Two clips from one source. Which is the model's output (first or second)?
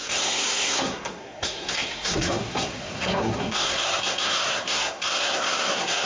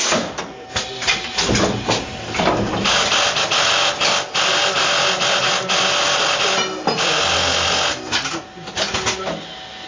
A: first